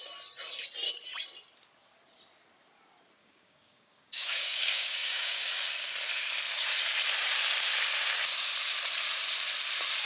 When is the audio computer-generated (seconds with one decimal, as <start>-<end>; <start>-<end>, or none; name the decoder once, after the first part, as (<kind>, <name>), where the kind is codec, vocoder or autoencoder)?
3.2-5.6 (codec, DAC)